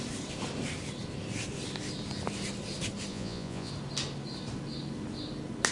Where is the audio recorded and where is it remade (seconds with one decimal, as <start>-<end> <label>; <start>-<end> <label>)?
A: 0.0-3.1 recorded; 3.1-3.7 remade; 3.7-5.7 recorded

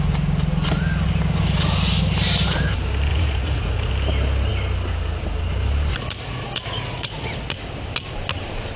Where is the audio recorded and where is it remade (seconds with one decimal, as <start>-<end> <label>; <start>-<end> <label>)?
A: 0.0-3.1 recorded; 3.1-3.9 remade; 3.9-5.9 recorded; 5.9-7.4 remade; 7.4-8.8 recorded